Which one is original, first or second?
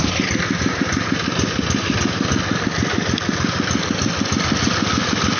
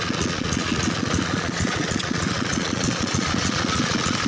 first